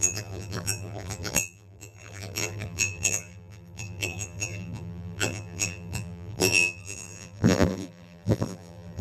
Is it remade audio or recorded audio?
remade